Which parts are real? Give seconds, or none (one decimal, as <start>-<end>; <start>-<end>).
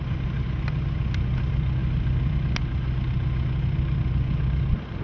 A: 0.0-5.0